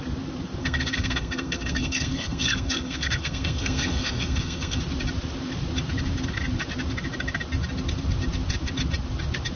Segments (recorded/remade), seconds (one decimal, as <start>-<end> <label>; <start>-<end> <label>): 0.0-0.6 recorded; 0.6-4.8 remade; 4.8-9.6 recorded